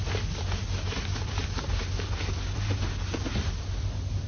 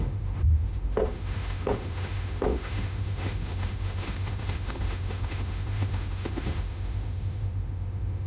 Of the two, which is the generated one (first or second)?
second